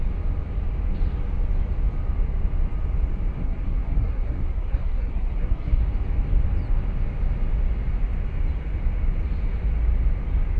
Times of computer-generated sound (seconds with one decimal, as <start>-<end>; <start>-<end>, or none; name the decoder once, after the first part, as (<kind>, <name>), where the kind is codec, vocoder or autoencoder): 3.4-5.8 (codec, SNAC)